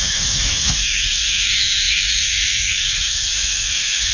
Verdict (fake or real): fake